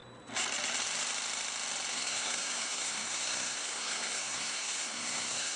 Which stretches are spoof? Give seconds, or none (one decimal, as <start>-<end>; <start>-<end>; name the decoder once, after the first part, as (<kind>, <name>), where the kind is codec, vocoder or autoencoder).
1.9-5.6 (codec, SNAC)